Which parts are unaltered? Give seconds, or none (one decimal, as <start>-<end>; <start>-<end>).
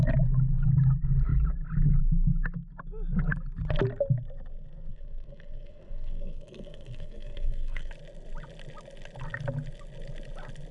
0.0-4.9; 7.9-10.7